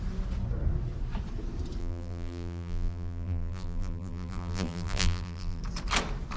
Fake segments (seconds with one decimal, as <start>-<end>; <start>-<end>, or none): 1.8-5.6